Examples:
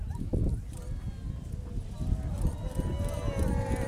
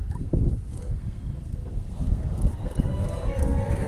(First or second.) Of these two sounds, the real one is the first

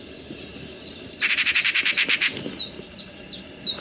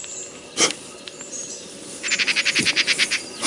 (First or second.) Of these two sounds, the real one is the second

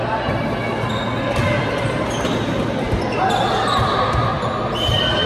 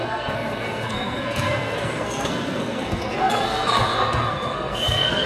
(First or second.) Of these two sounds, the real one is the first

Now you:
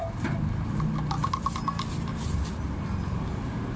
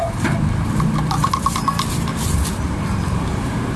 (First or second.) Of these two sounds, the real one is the first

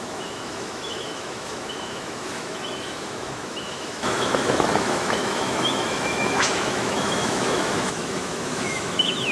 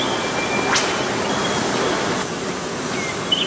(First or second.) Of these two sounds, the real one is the second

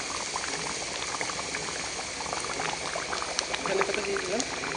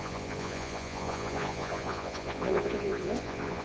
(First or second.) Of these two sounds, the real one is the first